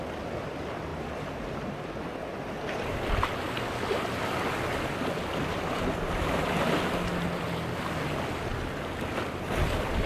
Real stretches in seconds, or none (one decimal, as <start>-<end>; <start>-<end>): 0.0-10.1